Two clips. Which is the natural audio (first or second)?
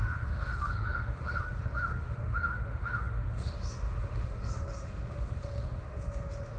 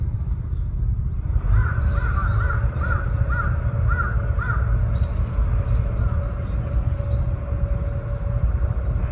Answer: second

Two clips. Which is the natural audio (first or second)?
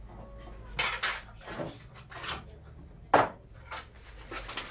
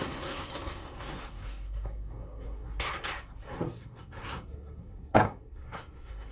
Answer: first